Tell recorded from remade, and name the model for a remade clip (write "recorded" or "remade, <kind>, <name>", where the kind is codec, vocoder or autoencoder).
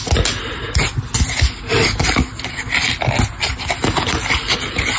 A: recorded